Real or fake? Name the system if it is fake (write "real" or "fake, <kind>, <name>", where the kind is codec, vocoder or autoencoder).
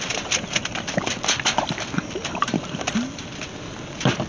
real